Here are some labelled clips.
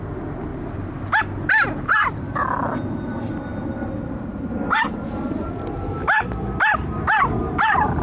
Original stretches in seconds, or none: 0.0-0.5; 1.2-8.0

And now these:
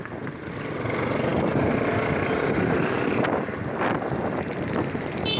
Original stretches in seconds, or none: 0.0-5.4

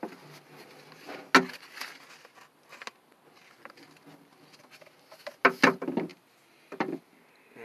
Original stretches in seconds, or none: 0.0-6.1; 7.0-7.6

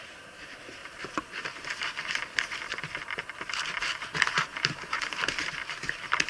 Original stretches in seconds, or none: 0.0-0.8; 2.1-4.5

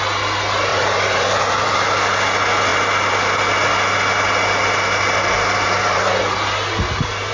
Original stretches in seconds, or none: 0.0-0.7; 1.7-7.3